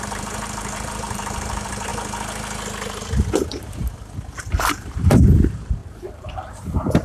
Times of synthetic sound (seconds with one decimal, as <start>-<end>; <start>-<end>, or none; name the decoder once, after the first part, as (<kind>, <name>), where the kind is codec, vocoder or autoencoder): 0.0-1.9 (vocoder, BigVGAN v2); 4.4-7.0